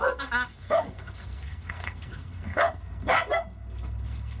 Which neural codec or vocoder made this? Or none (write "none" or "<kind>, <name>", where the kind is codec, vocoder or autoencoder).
codec, SNAC